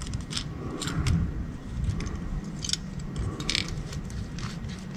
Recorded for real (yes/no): yes